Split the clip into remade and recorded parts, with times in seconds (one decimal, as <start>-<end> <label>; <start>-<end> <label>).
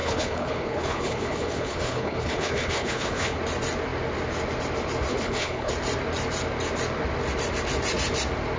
0.0-3.4 remade; 3.4-5.1 recorded; 5.1-5.7 remade; 5.7-8.6 recorded